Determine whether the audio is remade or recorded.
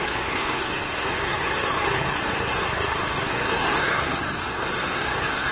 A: remade